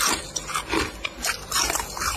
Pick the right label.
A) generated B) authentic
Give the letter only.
B